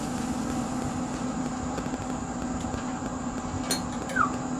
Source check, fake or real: real